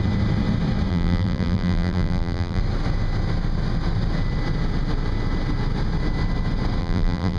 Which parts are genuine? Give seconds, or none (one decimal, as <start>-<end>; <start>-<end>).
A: 0.0-0.9; 2.6-6.8